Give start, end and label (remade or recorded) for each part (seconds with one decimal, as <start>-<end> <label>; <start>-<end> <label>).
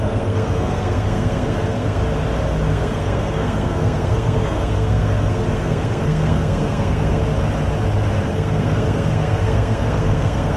0.0-2.0 remade; 2.0-2.7 recorded; 2.7-7.2 remade; 7.2-8.3 recorded; 8.3-10.6 remade